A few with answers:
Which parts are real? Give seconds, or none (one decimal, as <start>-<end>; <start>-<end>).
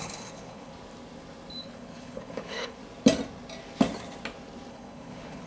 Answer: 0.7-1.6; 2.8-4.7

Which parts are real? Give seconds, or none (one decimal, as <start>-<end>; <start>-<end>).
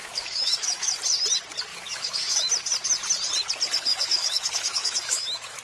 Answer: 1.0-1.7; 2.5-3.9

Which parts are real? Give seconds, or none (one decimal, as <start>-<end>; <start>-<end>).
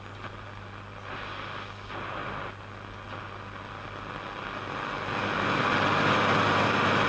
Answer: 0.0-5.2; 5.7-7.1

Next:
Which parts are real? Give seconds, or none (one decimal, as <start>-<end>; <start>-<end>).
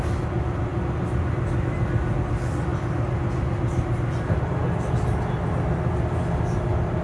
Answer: 0.0-7.0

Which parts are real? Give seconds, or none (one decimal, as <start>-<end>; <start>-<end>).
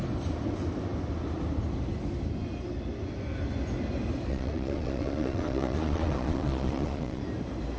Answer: 0.0-4.3; 7.2-7.8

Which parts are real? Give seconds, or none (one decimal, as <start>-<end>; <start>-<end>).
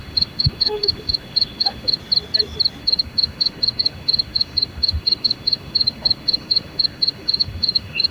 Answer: 2.0-2.8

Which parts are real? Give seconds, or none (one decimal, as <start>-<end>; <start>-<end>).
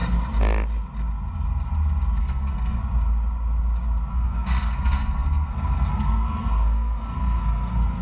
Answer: 0.0-2.2; 2.8-4.1